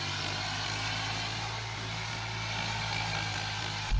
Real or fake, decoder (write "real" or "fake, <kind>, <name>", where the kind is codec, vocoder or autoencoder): real